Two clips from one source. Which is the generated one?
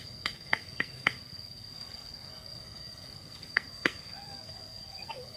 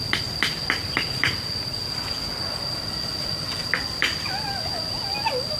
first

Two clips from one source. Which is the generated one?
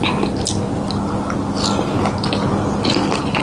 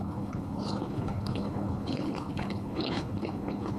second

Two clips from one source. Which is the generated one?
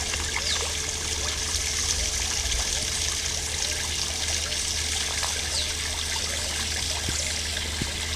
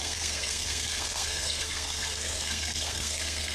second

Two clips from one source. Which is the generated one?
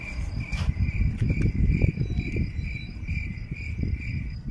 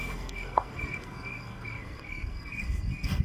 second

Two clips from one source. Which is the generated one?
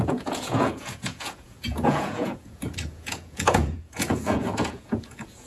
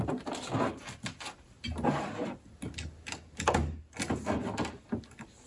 first